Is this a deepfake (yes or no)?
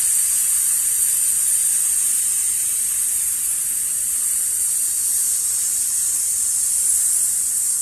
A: no